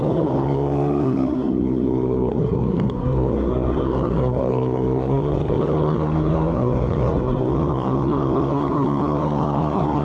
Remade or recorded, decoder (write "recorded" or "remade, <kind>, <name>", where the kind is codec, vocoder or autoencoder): remade, codec, SNAC